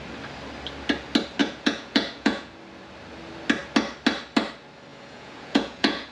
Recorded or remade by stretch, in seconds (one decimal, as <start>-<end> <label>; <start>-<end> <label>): 0.0-1.4 recorded; 1.4-2.5 remade; 2.5-4.9 recorded; 4.9-6.1 remade